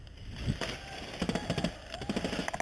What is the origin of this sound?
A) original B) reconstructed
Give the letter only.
A